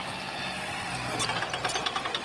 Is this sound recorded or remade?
recorded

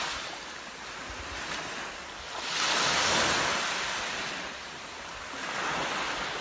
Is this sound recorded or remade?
recorded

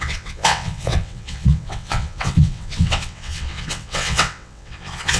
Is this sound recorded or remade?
remade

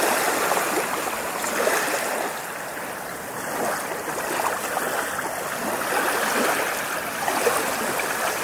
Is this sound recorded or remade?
recorded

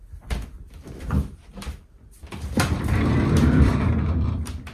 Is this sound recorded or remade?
remade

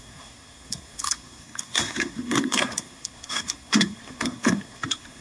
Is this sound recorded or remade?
remade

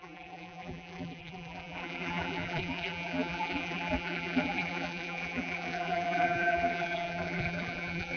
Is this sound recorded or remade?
remade